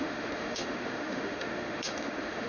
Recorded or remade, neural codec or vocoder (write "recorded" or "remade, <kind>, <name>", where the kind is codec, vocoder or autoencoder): remade, autoencoder, DAC-VAE